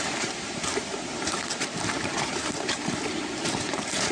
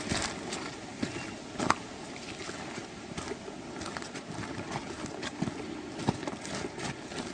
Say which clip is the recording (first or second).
second